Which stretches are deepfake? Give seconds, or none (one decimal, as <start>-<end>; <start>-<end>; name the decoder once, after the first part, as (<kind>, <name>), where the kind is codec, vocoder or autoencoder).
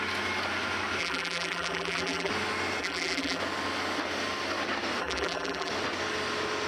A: 1.0-2.3 (vocoder, BigVGAN v2); 2.8-3.4; 5.0-5.7